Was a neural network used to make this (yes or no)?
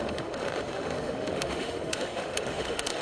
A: yes